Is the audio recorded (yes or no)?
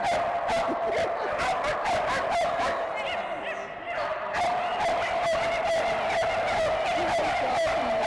yes